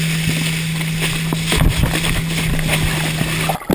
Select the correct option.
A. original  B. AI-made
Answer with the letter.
A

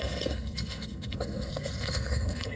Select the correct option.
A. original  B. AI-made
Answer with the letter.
B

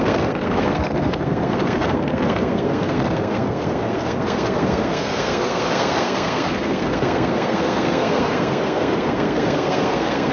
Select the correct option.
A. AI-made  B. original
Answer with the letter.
A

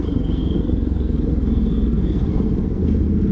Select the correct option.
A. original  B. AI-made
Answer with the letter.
B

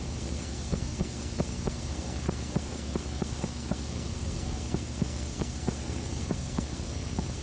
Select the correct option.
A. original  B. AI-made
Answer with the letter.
B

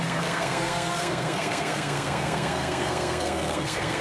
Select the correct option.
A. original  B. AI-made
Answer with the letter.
B